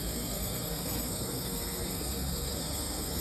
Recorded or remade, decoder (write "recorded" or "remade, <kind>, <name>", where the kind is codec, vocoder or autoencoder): remade, codec, SNAC